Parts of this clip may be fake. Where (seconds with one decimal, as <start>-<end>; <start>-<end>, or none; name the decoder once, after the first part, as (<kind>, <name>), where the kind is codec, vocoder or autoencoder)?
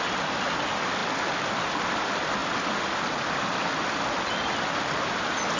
none